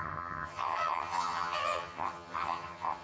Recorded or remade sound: remade